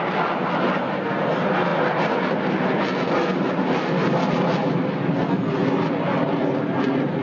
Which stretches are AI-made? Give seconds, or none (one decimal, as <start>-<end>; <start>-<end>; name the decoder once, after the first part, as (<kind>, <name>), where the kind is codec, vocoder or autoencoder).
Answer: none